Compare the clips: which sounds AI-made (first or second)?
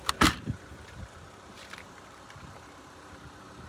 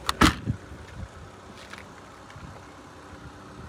first